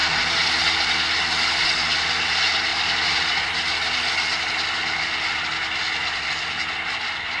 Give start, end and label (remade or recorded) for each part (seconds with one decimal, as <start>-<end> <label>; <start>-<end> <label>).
0.0-7.4 recorded